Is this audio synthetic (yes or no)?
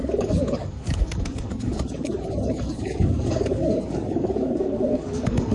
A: yes